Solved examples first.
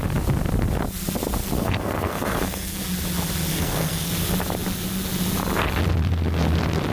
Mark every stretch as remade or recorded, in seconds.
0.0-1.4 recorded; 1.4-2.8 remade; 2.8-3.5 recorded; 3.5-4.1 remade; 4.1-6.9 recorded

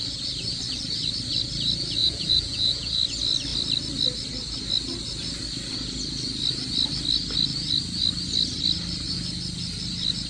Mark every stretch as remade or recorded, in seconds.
0.0-2.0 recorded; 2.0-3.0 remade; 3.0-10.3 recorded

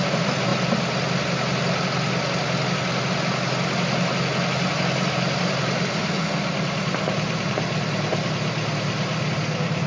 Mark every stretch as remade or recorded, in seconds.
0.0-0.5 remade; 0.5-5.1 recorded; 5.1-9.9 remade